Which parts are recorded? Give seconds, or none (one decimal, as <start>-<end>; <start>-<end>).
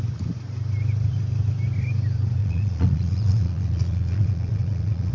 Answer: 0.0-2.4